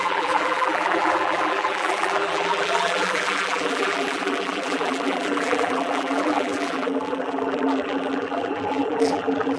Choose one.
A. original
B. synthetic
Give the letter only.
B